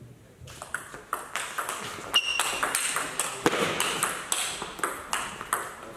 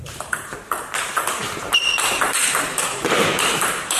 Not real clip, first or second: second